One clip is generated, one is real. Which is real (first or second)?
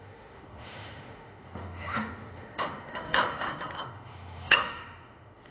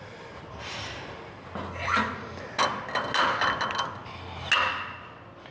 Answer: second